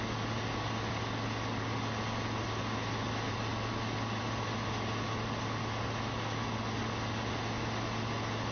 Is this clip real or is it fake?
real